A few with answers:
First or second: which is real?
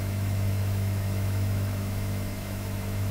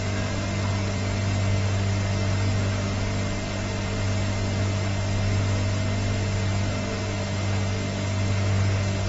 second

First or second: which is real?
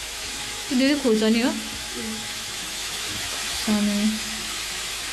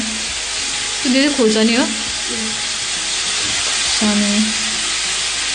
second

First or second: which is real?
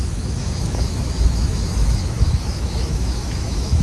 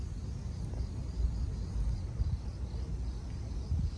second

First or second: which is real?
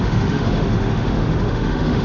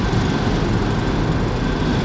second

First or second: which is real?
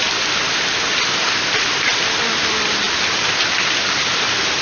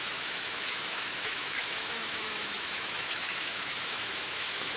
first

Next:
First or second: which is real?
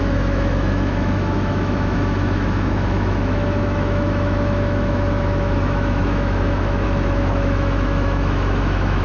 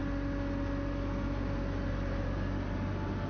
second